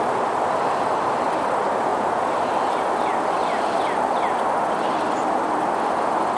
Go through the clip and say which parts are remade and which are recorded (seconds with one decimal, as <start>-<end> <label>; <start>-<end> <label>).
0.0-6.4 recorded